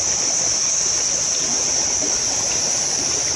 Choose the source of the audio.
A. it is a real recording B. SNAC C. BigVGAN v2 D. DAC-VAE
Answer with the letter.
A